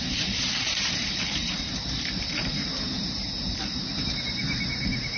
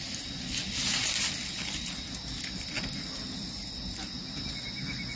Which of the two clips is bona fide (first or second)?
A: second